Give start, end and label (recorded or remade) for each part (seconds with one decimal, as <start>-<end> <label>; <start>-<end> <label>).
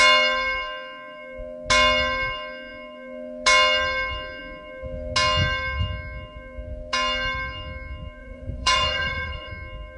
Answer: 0.0-8.2 recorded; 8.2-9.5 remade; 9.5-10.0 recorded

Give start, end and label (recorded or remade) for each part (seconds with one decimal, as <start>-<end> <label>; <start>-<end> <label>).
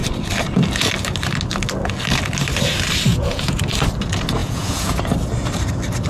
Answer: 0.0-3.1 recorded; 3.1-3.6 remade; 3.6-4.4 recorded; 4.4-5.0 remade; 5.0-6.1 recorded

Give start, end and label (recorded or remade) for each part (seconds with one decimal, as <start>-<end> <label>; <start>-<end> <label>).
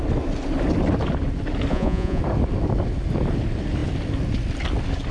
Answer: 0.0-1.7 recorded; 1.7-2.2 remade; 2.2-5.1 recorded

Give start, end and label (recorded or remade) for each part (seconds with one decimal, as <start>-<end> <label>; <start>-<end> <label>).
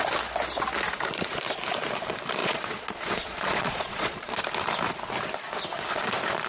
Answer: 0.0-2.4 recorded; 2.4-4.4 remade; 4.4-6.5 recorded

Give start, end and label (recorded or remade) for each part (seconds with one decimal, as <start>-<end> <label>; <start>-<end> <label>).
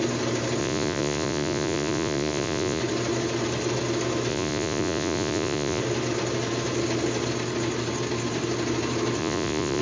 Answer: 0.0-0.6 recorded; 0.6-2.8 remade; 2.8-4.3 recorded; 4.3-5.8 remade; 5.8-9.2 recorded; 9.2-9.8 remade